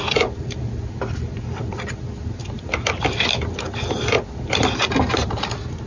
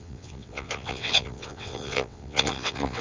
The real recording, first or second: first